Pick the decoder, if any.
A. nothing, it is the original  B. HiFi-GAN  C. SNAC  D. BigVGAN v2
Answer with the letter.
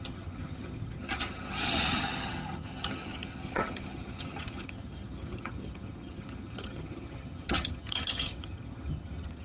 B